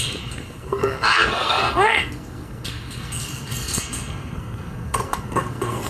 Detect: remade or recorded remade